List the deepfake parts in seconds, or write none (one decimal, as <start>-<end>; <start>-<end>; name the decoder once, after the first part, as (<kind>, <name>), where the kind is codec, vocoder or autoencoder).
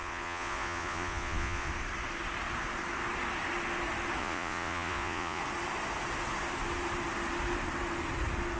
0.0-1.7 (vocoder, Vocos); 4.2-5.4